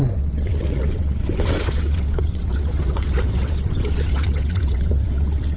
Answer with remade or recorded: remade